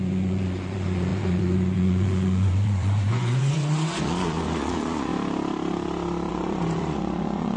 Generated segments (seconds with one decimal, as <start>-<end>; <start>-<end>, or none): 0.0-5.1; 6.3-7.6